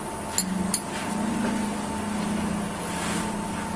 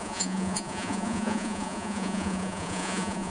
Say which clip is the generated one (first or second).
second